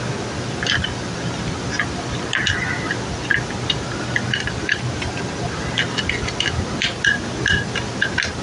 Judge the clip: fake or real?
real